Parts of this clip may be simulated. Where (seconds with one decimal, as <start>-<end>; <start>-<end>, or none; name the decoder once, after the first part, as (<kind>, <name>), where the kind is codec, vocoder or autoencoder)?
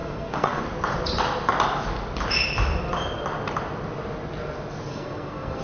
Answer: 0.0-0.6 (codec, SNAC); 4.9-5.6